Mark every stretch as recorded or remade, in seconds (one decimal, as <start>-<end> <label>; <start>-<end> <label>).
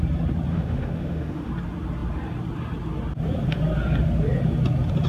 0.0-0.5 recorded; 0.5-1.5 remade; 1.5-5.1 recorded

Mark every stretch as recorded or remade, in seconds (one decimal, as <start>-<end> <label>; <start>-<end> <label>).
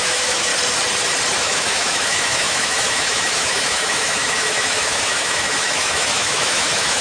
0.0-0.5 remade; 0.5-1.4 recorded; 1.4-7.0 remade